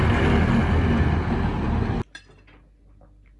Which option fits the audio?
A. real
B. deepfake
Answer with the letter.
A